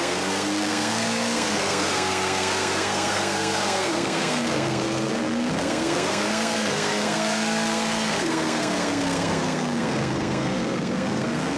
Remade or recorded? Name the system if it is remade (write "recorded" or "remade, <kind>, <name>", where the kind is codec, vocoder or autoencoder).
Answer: remade, codec, SNAC